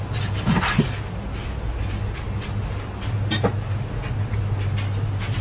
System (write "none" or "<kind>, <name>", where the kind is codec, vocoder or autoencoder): none